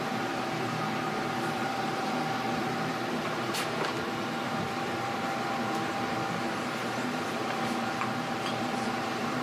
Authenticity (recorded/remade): remade